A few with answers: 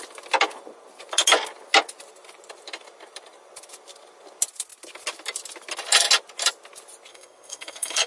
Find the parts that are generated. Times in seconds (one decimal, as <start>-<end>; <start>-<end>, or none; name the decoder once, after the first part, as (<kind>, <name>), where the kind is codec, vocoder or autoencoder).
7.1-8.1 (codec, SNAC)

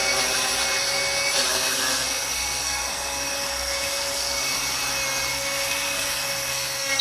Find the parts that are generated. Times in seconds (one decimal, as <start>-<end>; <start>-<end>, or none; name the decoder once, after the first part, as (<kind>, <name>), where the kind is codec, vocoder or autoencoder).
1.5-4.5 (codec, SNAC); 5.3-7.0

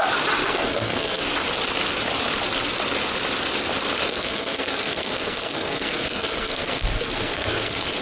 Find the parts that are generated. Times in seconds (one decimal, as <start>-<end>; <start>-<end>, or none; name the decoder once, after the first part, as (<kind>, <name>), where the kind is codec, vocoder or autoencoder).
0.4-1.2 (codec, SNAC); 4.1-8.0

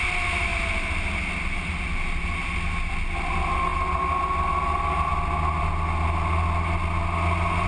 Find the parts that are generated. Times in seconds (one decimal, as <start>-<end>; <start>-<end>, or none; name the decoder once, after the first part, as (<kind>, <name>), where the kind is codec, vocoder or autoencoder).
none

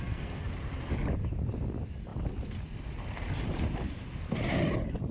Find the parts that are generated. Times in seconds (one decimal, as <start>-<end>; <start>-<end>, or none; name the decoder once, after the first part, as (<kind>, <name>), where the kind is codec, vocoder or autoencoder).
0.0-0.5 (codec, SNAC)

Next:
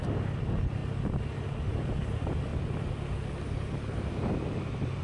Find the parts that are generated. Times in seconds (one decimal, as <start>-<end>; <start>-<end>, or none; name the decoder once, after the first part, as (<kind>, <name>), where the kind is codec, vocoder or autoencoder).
none

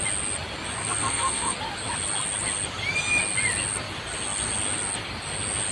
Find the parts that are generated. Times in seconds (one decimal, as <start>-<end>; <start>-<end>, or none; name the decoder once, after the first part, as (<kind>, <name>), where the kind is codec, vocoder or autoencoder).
0.8-1.6 (codec, SNAC)

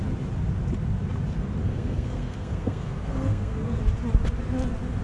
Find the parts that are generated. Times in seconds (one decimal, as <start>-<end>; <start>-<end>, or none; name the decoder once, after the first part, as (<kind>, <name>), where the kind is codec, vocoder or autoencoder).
1.6-3.8 (codec, SNAC)